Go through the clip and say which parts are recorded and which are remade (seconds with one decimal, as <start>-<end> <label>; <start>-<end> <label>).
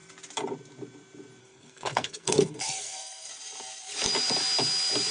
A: 0.0-1.4 recorded; 1.4-3.3 remade; 3.3-5.1 recorded